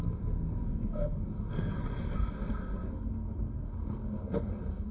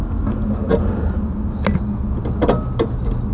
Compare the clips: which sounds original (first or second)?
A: second